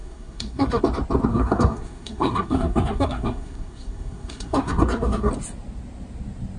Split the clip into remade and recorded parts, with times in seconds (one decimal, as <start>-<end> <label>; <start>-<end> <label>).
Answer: 0.0-0.8 remade; 0.8-1.3 recorded; 1.3-5.3 remade; 5.3-6.6 recorded